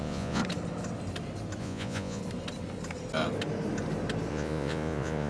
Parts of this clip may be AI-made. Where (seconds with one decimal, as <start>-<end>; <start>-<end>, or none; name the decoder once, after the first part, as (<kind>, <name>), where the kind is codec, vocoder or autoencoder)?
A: 0.0-0.4 (vocoder, Vocos); 1.6-2.2; 4.3-5.3

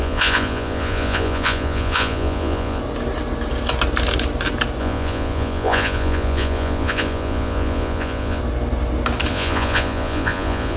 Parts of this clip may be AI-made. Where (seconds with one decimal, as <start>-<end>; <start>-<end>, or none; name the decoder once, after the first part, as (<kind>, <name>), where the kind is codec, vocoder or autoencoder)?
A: 0.0-2.8 (vocoder, Vocos); 4.8-8.4; 9.3-10.8